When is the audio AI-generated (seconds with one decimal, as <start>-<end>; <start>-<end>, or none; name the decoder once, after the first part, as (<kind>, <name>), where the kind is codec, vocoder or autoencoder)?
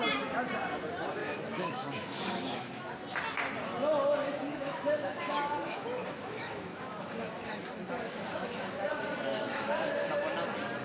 1.2-2.9 (autoencoder, DAC-VAE); 4.2-8.9; 9.3-10.1